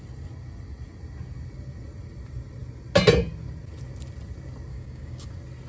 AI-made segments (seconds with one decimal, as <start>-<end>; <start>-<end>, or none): 4.7-5.3